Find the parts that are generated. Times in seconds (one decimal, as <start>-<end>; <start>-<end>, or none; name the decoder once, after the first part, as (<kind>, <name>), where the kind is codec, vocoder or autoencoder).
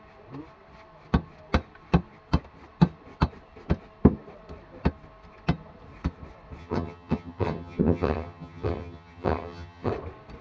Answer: 6.6-9.9 (vocoder, HiFi-GAN)